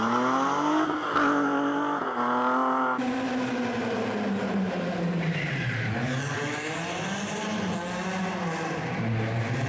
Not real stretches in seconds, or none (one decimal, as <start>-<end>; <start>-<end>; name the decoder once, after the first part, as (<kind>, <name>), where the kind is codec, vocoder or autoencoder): 3.8-7.4 (vocoder, BigVGAN v2)